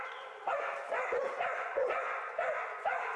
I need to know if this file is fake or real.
fake